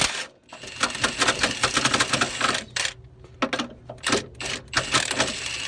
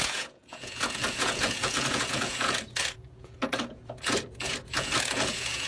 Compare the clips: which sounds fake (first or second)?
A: second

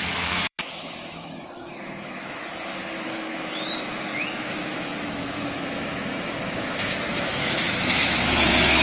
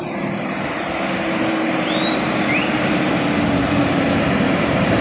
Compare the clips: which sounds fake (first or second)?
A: first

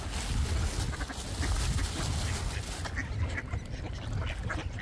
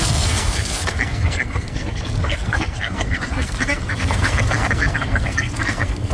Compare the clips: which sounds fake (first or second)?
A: second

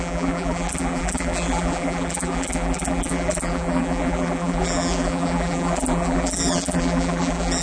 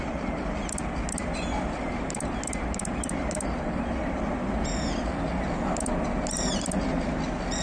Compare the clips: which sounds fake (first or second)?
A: first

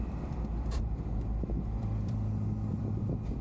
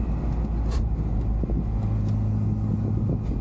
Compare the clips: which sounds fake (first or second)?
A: first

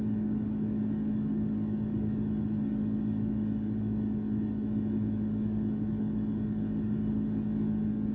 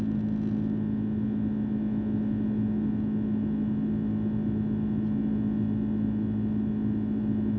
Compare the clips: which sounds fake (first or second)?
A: first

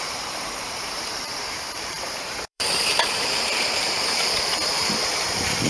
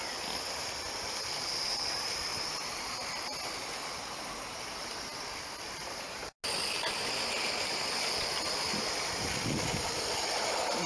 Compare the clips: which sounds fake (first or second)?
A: first